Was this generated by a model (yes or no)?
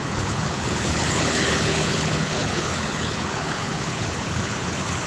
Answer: yes